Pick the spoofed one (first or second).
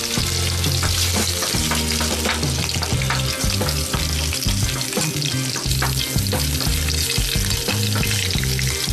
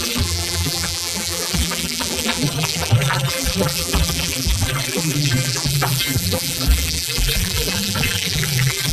second